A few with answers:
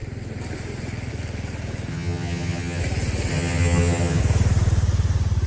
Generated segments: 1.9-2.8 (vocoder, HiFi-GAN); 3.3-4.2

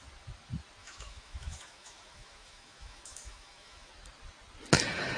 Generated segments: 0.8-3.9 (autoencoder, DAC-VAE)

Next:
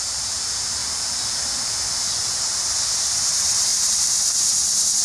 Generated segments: 0.0-0.8 (vocoder, BigVGAN v2); 2.4-5.0